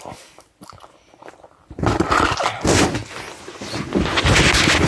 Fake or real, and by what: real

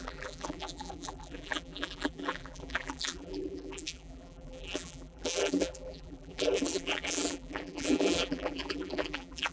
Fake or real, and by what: fake, vocoder, BigVGAN v2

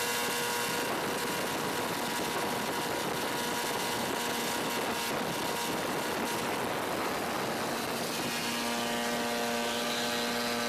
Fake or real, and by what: real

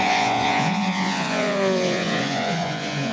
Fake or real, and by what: fake, vocoder, Vocos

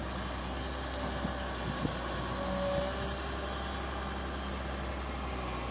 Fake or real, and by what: real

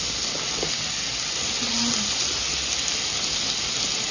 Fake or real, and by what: real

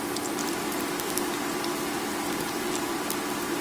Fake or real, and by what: real